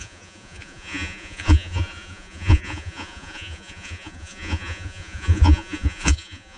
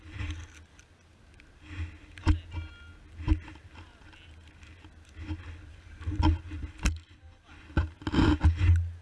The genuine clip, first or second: second